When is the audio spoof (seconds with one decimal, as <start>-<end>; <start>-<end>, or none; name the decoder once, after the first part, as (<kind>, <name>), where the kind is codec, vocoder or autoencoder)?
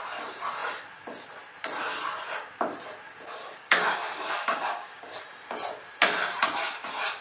3.4-5.2 (codec, DAC)